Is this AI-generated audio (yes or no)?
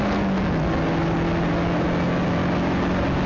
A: no